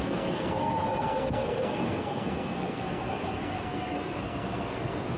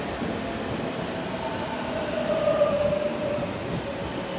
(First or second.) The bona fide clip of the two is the second